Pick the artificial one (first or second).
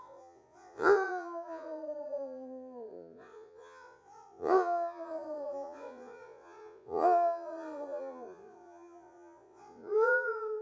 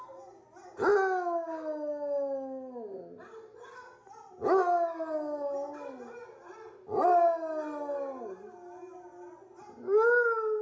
first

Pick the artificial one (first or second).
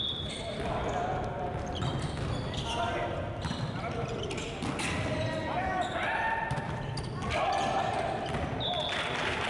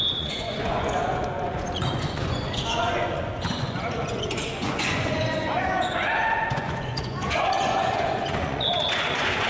second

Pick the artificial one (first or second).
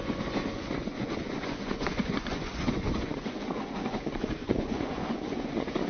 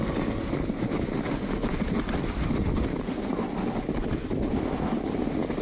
first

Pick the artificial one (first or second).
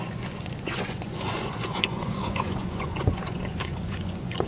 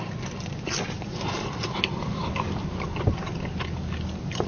first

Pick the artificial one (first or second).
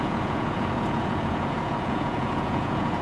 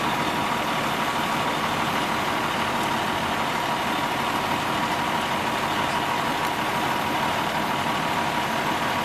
first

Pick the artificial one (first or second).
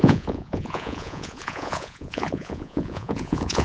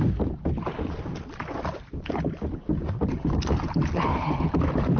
first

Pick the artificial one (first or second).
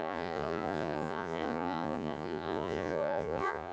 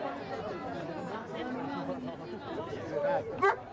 first